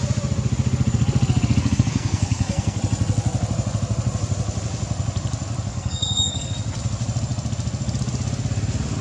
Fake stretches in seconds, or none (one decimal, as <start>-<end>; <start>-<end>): 1.6-2.8; 5.7-6.5

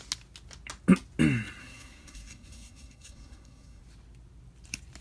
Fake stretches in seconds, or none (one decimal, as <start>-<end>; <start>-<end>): 1.6-3.8

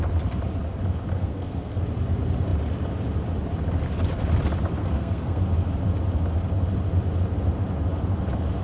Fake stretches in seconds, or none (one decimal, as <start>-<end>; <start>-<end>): 1.1-1.8; 4.8-5.4